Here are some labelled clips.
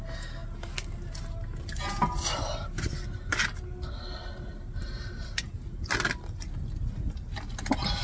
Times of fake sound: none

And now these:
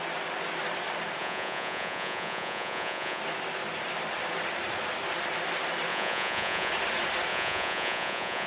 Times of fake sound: 1.2-3.2; 5.9-6.7; 7.3-8.5

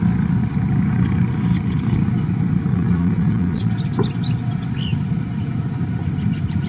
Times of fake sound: 2.7-3.7